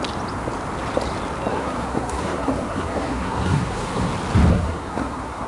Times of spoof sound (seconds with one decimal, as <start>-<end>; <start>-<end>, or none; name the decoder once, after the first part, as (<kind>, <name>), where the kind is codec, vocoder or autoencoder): 1.5-4.1 (codec, SNAC); 4.5-5.5